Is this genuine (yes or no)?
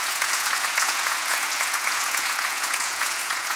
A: no